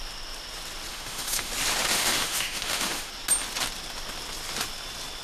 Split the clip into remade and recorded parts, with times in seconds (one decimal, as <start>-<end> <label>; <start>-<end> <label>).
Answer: 0.0-0.9 recorded; 0.9-1.5 remade; 1.5-1.9 recorded; 1.9-3.1 remade; 3.1-5.2 recorded